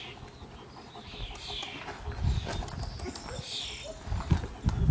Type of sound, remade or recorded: recorded